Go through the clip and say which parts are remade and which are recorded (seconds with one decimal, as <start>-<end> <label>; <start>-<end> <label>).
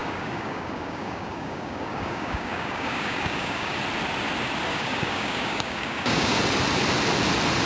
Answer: 0.0-3.8 remade; 3.8-4.7 recorded; 4.7-6.4 remade; 6.4-7.7 recorded